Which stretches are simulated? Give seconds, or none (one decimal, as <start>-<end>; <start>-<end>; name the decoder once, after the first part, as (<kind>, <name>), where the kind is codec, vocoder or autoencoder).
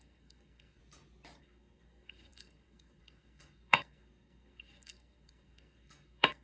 0.0-0.8 (codec, SNAC); 1.4-6.4